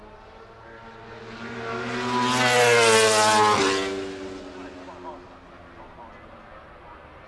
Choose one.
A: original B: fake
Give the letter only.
A